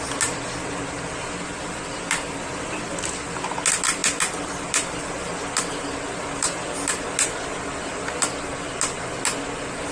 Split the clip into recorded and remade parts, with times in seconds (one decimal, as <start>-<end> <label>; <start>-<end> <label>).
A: 0.0-9.9 recorded